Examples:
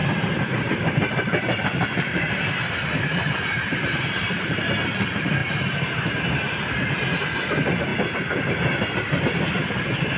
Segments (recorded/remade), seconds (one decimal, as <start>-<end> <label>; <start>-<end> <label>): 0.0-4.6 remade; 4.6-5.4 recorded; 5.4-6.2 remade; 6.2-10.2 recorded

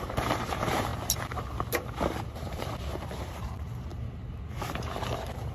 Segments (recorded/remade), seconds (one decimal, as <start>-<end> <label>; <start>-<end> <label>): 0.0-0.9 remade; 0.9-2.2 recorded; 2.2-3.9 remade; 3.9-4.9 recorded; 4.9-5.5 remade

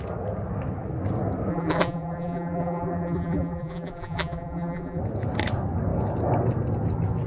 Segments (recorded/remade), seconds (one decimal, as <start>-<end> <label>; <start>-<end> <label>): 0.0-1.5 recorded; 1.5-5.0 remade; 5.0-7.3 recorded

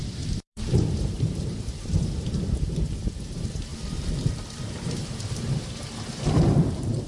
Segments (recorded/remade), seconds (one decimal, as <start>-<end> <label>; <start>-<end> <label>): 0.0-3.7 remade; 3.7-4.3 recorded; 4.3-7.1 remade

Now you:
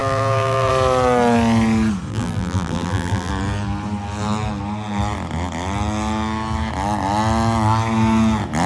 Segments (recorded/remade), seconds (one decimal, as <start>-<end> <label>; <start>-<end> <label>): 0.0-0.7 remade; 0.7-2.1 recorded; 2.1-3.3 remade; 3.3-8.7 recorded

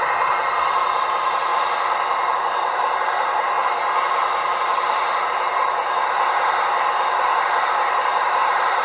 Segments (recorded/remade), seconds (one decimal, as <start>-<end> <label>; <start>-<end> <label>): 0.0-1.5 remade; 1.5-2.3 recorded; 2.3-3.6 remade; 3.6-4.6 recorded; 4.6-5.8 remade; 5.8-7.2 recorded; 7.2-8.8 remade